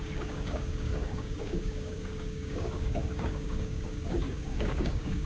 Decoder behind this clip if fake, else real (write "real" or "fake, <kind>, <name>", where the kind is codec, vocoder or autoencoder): fake, codec, DAC